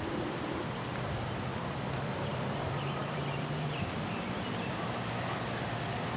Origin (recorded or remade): remade